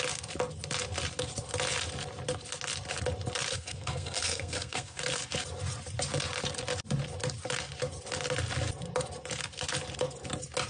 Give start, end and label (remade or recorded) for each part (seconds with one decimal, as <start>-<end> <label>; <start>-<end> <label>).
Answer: 0.0-3.5 recorded; 3.5-5.0 remade; 5.0-10.7 recorded